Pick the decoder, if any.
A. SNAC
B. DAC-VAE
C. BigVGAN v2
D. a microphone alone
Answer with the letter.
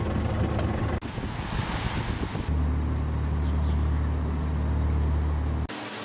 D